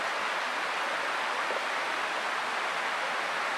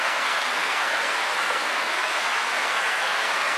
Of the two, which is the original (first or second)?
first